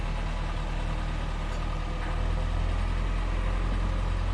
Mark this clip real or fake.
real